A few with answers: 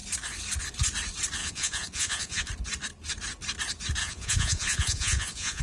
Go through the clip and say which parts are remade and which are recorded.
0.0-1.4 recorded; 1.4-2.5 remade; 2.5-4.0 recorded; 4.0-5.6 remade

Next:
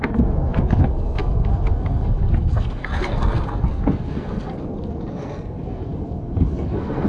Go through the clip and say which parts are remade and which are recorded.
0.0-7.1 remade